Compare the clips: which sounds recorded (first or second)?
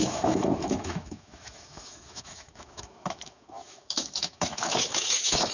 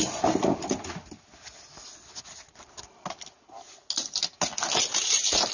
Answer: second